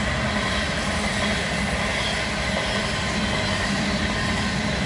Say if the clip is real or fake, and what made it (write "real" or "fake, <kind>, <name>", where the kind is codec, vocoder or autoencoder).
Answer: real